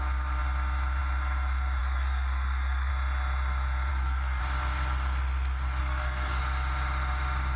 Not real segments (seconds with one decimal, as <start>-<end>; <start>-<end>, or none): 1.8-2.9; 3.9-4.4; 5.8-6.4